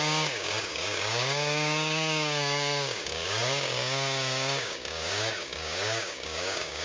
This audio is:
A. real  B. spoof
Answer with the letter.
B